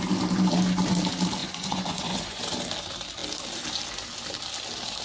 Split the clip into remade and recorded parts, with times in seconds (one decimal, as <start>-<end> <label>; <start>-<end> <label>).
0.0-1.4 recorded; 1.4-2.4 remade; 2.4-5.0 recorded